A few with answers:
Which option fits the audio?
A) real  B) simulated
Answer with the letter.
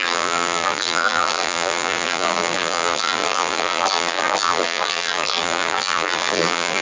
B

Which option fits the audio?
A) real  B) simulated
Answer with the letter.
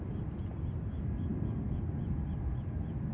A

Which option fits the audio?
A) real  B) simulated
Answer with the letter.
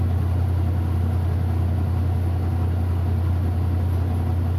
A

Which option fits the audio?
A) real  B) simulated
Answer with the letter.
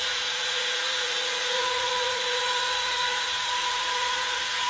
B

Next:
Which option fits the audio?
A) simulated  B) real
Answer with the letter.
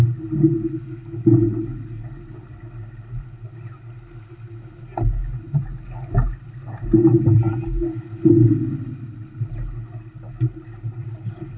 B